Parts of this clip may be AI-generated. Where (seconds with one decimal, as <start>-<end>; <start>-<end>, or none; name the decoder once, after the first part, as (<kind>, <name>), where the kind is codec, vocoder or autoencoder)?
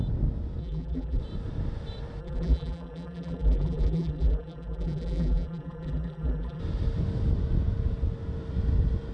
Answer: 0.6-1.2 (vocoder, BigVGAN v2); 2.2-6.6